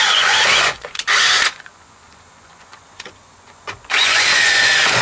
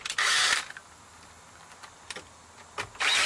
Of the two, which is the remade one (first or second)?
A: first